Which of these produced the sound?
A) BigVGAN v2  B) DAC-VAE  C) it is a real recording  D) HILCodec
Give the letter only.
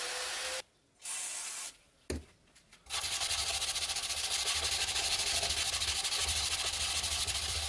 C